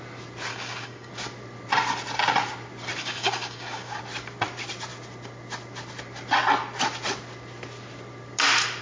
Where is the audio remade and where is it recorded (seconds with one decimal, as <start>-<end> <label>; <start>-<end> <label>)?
0.0-0.5 recorded; 0.5-1.1 remade; 1.1-3.0 recorded; 3.0-4.0 remade; 4.0-8.8 recorded